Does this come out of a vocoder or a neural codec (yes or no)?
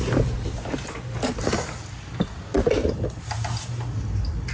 no